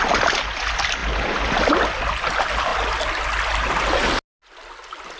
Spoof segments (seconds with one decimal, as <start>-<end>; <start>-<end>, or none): none